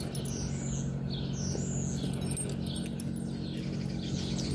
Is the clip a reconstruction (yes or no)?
no